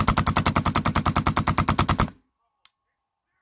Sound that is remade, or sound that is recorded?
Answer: recorded